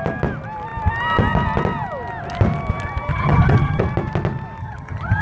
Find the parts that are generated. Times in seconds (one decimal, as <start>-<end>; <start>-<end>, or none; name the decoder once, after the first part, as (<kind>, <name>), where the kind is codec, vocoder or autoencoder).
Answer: 3.1-3.8 (vocoder, HiFi-GAN); 4.6-5.2